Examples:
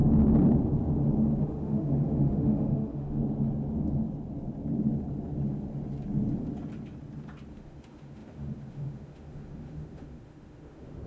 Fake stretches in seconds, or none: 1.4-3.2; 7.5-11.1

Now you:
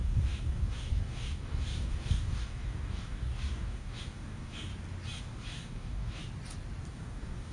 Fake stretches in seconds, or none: 0.0-4.7; 5.2-6.2; 6.9-7.5

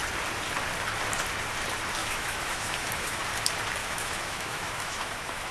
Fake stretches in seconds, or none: 2.0-3.2; 3.8-5.5